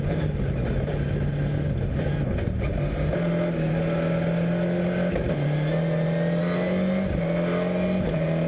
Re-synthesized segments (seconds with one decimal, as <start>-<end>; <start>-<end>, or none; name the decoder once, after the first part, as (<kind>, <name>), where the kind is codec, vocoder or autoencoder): none